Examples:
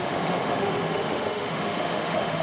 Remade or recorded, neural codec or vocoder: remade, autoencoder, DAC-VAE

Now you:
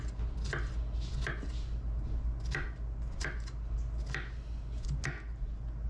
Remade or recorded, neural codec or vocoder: recorded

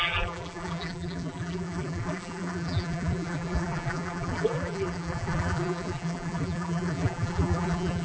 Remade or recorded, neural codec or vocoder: remade, vocoder, BigVGAN v2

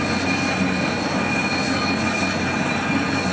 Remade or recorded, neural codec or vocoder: recorded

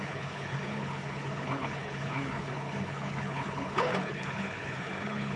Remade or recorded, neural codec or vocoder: remade, codec, HILCodec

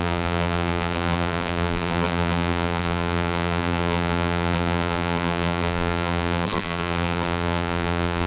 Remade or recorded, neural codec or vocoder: remade, vocoder, BigVGAN v2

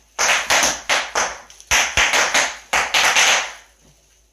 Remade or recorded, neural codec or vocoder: recorded